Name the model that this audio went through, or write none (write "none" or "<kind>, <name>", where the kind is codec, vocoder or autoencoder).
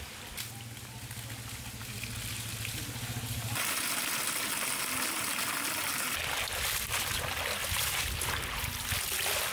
none